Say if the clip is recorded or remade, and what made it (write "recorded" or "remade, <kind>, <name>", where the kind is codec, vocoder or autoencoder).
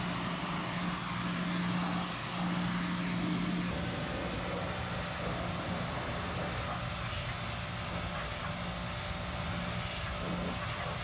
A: recorded